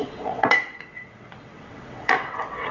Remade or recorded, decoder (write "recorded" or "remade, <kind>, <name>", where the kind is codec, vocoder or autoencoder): remade, vocoder, WaveNeXt